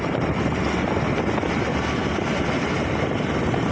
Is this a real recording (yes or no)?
yes